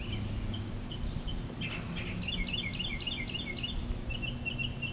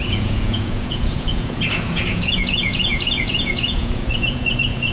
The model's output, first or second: second